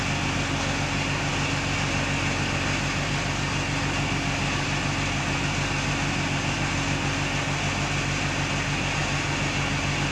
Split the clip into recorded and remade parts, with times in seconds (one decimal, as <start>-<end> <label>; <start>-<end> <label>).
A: 0.0-10.1 recorded